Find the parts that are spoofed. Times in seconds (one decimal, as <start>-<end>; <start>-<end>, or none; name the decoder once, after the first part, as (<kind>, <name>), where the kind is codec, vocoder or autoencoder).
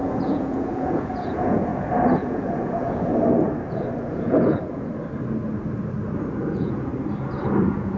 0.0-1.7 (vocoder, Vocos); 2.2-3.1; 4.1-4.9; 6.4-6.9; 7.6-8.0